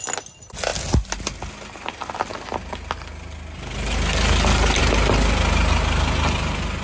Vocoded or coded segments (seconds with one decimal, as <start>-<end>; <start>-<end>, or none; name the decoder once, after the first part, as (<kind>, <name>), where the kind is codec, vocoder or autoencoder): none